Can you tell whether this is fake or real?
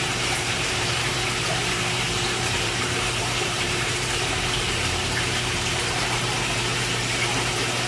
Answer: fake